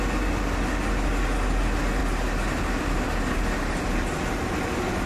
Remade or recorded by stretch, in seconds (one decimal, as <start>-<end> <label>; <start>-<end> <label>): 0.0-5.1 recorded

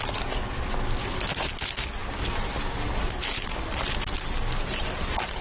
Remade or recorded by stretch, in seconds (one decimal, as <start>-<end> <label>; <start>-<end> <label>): 0.0-5.4 recorded

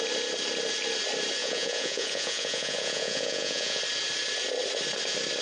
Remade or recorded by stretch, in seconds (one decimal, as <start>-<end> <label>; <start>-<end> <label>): 0.0-1.4 recorded; 1.4-3.8 remade; 3.8-5.4 recorded

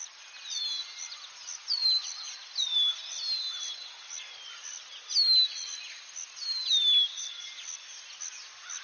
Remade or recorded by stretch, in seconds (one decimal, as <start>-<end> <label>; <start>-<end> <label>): 0.0-8.8 recorded

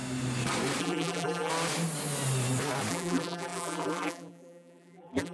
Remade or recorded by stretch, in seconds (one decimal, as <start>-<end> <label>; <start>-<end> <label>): 0.0-0.8 recorded; 0.8-1.5 remade; 1.5-2.9 recorded; 2.9-5.3 remade